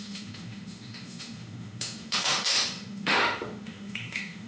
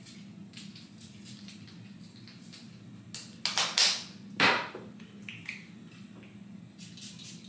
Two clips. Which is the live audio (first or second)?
second